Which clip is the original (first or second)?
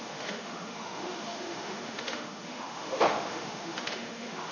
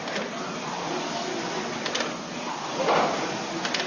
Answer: second